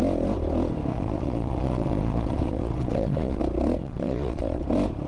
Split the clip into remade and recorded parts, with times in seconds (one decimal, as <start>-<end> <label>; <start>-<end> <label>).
0.0-0.9 recorded; 0.9-3.4 remade; 3.4-3.8 recorded; 3.8-4.6 remade; 4.6-5.1 recorded